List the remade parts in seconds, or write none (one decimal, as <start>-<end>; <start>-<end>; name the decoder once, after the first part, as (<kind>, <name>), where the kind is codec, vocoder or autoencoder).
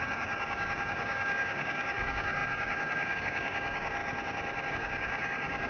0.0-4.0 (codec, DAC); 4.7-5.7